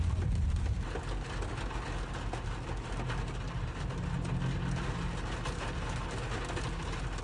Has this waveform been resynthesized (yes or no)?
no